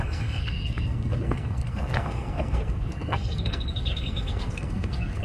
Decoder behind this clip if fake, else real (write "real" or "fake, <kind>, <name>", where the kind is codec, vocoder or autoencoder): fake, codec, SNAC